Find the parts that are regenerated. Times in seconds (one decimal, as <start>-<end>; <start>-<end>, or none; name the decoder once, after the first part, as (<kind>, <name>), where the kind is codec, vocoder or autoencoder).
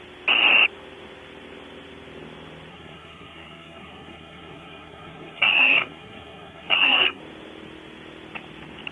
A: 2.7-7.2 (codec, SNAC)